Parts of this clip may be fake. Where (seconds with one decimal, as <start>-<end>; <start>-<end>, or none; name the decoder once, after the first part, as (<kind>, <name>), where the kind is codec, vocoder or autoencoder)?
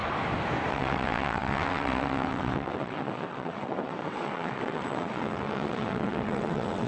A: 0.7-6.9 (vocoder, WaveNeXt)